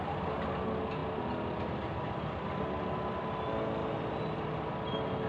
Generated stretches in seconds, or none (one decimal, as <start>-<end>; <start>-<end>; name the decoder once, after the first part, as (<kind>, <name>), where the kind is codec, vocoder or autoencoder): 3.8-4.7 (vocoder, BigVGAN v2)